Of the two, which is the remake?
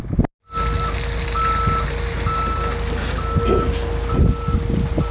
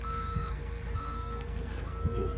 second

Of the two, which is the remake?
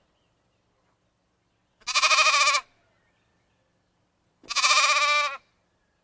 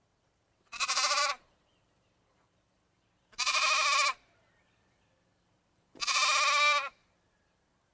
second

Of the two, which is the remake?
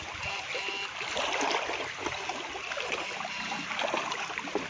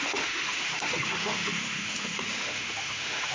second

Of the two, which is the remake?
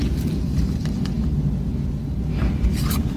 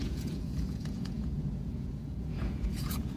second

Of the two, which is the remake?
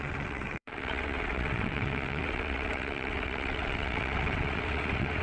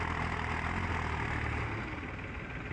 first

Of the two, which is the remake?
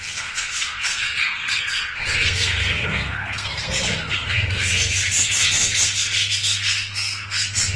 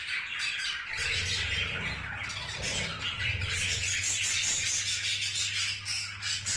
first